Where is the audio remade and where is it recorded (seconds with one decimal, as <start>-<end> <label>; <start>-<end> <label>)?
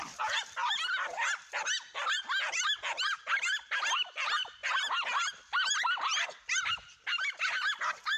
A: 0.0-8.2 recorded